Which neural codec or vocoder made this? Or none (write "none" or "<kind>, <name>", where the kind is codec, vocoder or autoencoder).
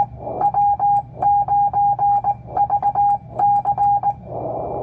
none